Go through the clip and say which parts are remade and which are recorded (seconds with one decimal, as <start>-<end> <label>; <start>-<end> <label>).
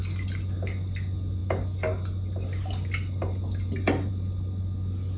0.0-5.2 recorded